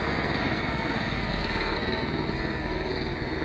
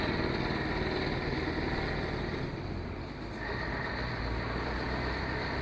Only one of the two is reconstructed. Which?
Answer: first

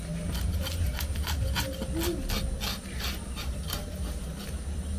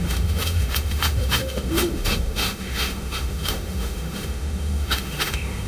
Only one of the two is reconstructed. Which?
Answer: second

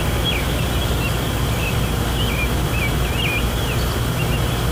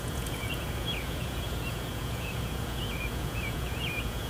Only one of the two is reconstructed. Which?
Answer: second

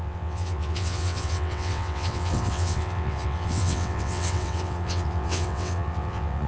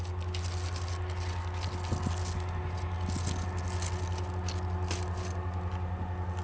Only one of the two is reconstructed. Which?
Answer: first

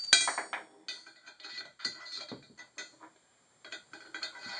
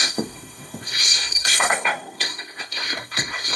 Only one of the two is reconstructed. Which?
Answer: second